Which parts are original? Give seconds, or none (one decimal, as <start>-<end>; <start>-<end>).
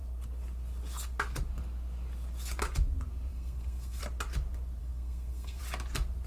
0.0-3.3; 4.0-4.8; 5.6-6.3